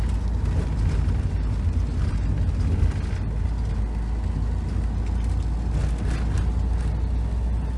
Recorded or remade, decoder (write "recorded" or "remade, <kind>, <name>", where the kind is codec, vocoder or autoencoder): recorded